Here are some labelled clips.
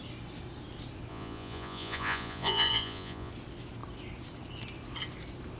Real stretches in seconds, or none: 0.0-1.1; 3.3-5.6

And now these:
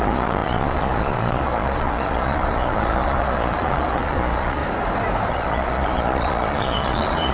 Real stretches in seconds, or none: 4.6-5.3